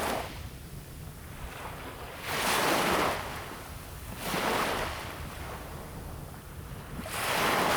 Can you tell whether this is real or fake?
real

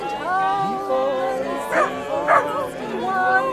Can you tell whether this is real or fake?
real